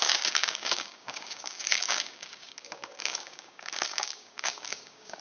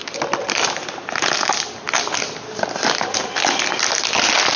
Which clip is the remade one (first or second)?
first